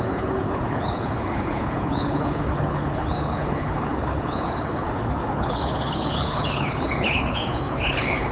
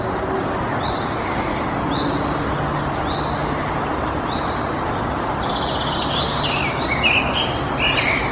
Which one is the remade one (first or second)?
first